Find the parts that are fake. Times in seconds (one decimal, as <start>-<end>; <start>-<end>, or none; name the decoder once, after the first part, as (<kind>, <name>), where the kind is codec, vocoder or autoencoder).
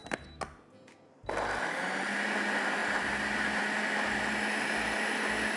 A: none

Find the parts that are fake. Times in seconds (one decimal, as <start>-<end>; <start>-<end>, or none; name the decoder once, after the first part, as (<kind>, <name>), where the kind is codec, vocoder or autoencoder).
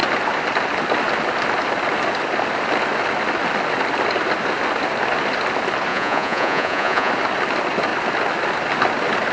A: 5.9-7.1 (vocoder, Vocos)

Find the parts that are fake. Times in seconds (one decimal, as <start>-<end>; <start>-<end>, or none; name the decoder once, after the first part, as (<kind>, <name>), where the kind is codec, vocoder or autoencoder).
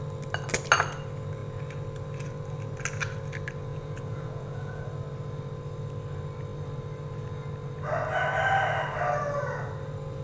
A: 3.7-4.8 (vocoder, Vocos)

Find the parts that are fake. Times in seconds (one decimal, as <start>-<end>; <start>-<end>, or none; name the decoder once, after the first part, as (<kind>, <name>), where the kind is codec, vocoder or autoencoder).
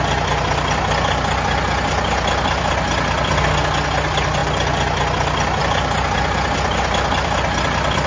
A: none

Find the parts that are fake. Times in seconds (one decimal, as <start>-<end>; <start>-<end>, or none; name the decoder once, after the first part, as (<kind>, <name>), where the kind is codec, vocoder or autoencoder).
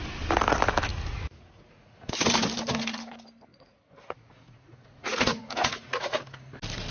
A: 0.9-2.1 (vocoder, Vocos); 3.5-6.2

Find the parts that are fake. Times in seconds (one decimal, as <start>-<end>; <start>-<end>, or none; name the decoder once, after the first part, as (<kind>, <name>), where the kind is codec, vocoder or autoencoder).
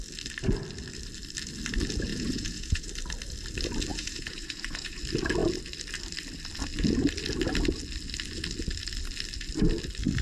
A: 2.1-2.9 (vocoder, Vocos); 3.9-5.0